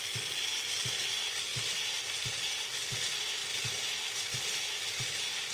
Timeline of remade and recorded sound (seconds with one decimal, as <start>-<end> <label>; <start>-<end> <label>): 0.0-0.5 recorded; 0.5-1.1 remade; 1.1-5.5 recorded